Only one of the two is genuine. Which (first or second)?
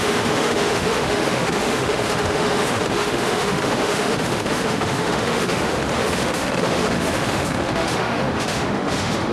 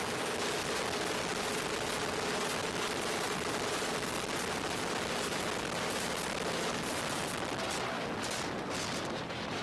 second